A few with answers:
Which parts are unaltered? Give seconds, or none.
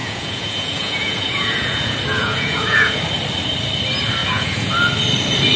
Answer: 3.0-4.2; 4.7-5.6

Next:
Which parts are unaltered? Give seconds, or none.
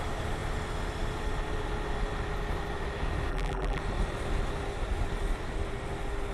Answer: 0.0-3.3; 3.8-6.3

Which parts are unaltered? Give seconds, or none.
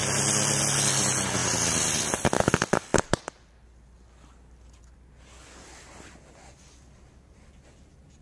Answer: 0.0-2.9; 4.8-8.2